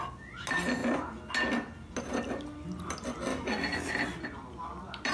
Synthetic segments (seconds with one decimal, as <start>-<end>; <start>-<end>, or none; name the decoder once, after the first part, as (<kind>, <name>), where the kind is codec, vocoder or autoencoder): 3.3-3.9 (autoencoder, DAC-VAE)